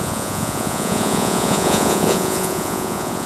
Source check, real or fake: fake